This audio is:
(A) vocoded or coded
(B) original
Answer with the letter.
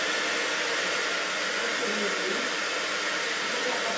B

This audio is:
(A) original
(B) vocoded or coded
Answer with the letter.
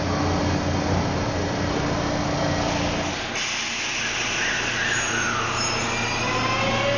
A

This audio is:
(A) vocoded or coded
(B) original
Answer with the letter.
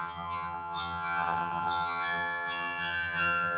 A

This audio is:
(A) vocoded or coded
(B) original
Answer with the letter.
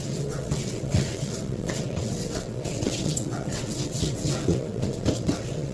A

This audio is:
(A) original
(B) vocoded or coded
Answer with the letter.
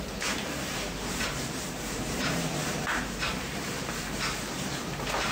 B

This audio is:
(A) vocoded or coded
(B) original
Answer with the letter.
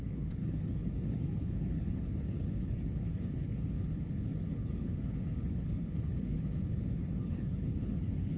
A